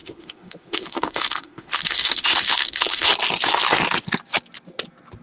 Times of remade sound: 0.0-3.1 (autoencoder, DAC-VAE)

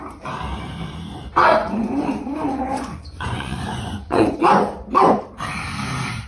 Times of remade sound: 1.6-5.2 (vocoder, Vocos)

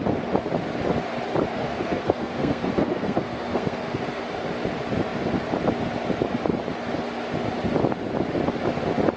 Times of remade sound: 1.5-4.2 (codec, SNAC)